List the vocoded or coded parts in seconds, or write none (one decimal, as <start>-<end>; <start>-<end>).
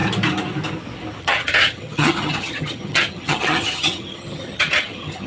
1.2-5.3